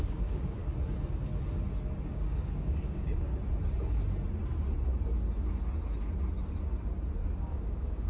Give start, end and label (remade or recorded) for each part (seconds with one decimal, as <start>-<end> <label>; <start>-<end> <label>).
0.0-0.6 remade; 0.6-2.1 recorded; 2.1-3.3 remade; 3.3-7.4 recorded; 7.4-8.1 remade

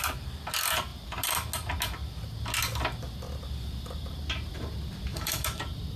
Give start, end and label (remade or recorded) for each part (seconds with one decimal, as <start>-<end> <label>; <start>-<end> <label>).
0.0-5.1 recorded; 5.1-5.6 remade; 5.6-6.0 recorded

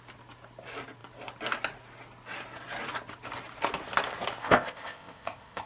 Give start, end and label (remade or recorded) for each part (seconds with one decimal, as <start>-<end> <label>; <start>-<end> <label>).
0.0-4.4 recorded; 4.4-5.7 remade

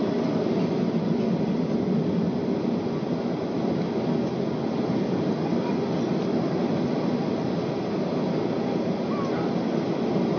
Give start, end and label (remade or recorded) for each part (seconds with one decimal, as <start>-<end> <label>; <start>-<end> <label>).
0.0-10.4 recorded